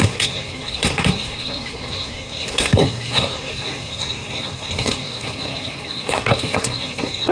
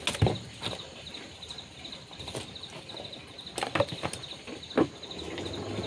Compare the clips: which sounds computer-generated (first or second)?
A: first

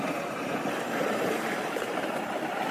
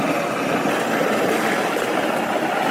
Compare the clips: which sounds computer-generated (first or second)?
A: first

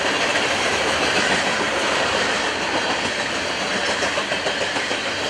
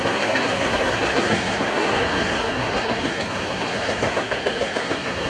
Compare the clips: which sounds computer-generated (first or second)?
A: second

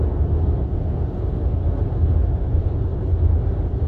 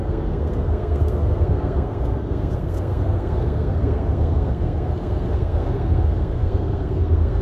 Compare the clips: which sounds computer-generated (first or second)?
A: second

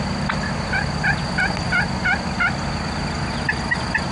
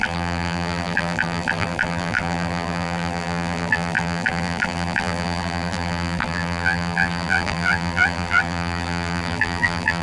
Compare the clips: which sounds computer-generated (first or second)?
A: second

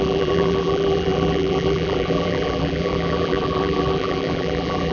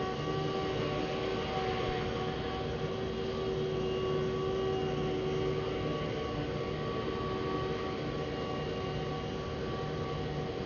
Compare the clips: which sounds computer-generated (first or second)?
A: first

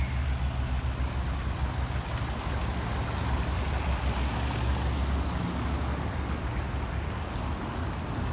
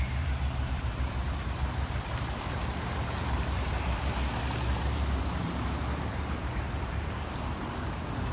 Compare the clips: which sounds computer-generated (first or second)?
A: second